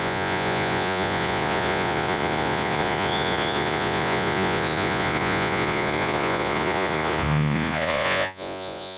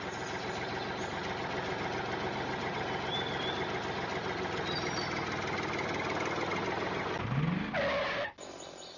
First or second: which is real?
second